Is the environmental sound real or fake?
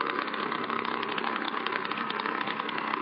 fake